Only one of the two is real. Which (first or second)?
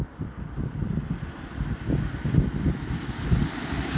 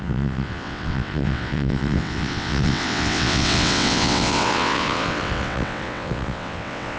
first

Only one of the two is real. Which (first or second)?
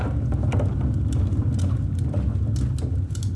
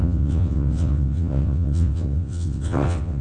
first